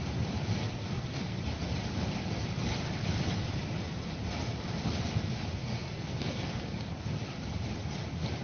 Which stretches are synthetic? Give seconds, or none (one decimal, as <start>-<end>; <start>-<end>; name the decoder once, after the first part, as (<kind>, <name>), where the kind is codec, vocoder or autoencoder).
0.6-1.4 (codec, SNAC); 5.6-6.9